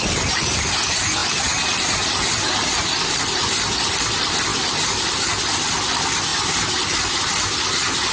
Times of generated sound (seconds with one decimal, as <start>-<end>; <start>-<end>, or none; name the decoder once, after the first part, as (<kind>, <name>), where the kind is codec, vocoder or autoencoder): none